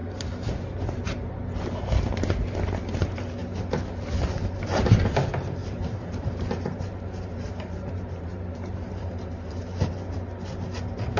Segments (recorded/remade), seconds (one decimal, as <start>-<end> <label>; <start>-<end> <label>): 0.0-5.6 recorded; 5.6-9.6 remade; 9.6-11.2 recorded